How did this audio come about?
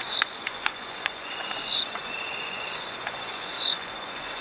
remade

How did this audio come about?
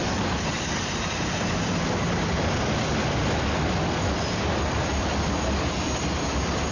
recorded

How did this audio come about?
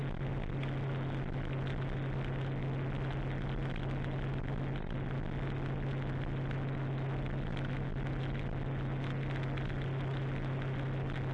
recorded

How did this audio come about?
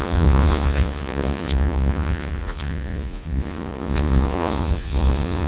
remade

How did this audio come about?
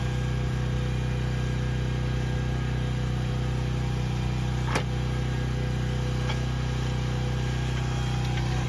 recorded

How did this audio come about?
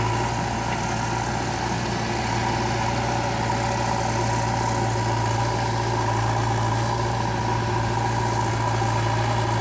recorded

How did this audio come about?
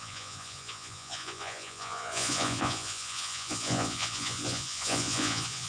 remade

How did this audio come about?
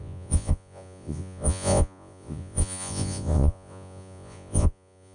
remade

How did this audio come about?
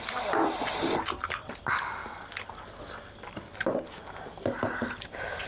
recorded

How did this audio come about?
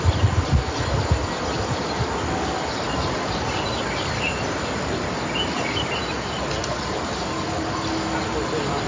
recorded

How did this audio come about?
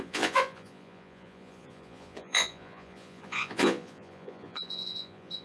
remade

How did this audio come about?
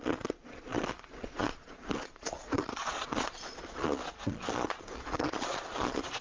remade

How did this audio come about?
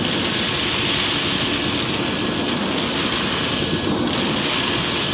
recorded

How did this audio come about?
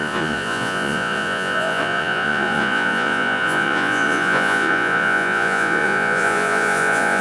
remade